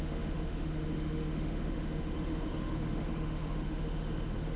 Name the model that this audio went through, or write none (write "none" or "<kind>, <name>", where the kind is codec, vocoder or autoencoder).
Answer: autoencoder, DAC-VAE